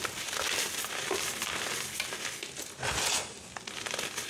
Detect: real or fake real